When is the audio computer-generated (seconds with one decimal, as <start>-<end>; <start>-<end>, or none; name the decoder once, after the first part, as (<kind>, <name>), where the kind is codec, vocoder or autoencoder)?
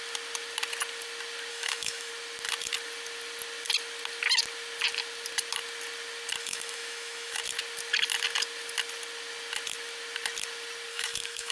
1.5-2.1 (autoencoder, DAC-VAE); 6.4-7.4; 10.9-11.5